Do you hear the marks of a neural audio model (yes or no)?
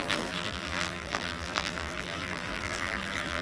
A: yes